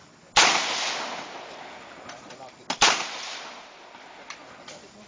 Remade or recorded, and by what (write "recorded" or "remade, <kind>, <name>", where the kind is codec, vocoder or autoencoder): recorded